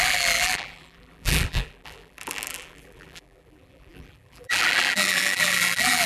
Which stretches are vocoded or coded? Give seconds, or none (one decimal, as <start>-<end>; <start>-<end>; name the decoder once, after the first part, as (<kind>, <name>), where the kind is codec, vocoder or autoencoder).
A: 0.0-6.1 (vocoder, BigVGAN v2)

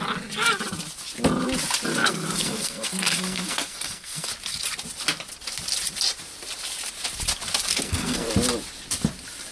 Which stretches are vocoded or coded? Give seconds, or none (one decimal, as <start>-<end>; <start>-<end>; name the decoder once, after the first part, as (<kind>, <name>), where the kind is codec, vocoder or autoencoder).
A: 2.0-4.3 (codec, SNAC); 7.7-8.3

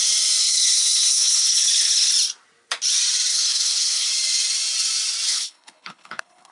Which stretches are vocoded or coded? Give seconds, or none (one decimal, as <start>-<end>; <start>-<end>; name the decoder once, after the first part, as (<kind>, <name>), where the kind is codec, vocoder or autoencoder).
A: 0.4-2.1 (codec, HILCodec); 3.3-4.1; 5.3-6.5

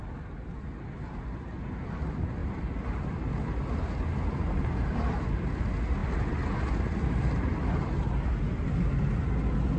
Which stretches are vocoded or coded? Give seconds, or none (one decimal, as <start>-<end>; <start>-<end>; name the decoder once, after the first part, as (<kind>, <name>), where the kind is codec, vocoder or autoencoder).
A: none

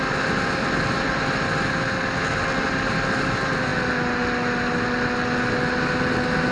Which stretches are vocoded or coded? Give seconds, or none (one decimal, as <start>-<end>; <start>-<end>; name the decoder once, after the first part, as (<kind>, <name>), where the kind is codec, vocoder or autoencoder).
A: none